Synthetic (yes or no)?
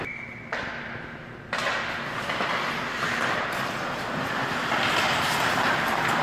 no